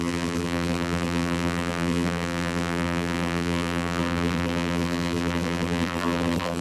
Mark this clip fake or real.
fake